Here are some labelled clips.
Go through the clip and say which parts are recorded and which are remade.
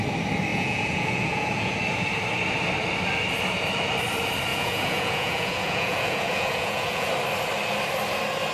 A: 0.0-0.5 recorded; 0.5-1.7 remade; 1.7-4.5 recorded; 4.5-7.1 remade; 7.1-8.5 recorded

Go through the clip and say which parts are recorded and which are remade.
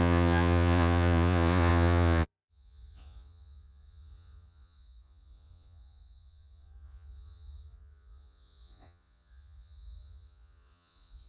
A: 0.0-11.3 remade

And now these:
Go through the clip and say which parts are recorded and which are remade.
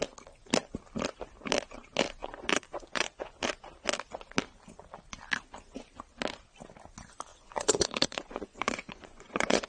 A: 0.0-2.2 recorded; 2.2-3.4 remade; 3.4-7.3 recorded; 7.3-9.7 remade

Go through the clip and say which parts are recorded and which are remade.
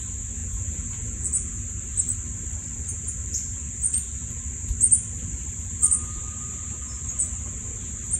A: 0.0-0.4 recorded; 0.4-1.6 remade; 1.6-8.2 recorded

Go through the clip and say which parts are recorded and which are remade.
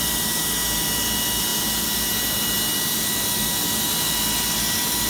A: 0.0-5.1 recorded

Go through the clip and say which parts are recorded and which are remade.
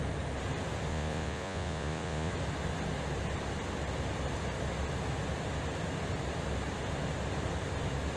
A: 0.0-0.9 recorded; 0.9-2.3 remade; 2.3-8.2 recorded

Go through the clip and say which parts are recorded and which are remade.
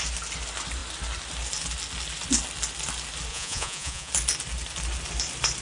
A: 0.0-3.3 recorded; 3.3-4.1 remade; 4.1-5.6 recorded